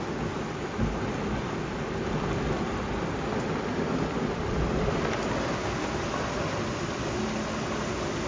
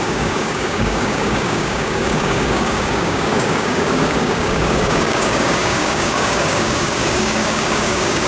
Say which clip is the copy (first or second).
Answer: second